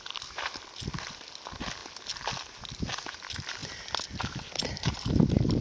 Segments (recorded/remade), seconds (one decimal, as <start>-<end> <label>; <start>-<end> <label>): 0.0-5.6 recorded